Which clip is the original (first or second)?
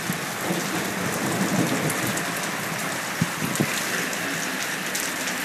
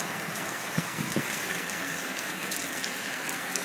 first